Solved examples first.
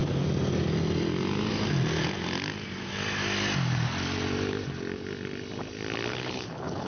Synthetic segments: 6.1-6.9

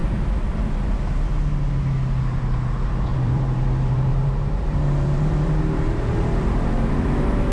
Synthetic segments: 3.1-7.5